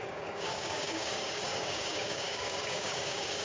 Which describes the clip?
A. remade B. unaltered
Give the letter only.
A